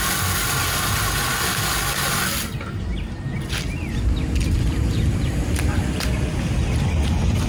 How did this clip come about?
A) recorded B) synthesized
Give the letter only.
A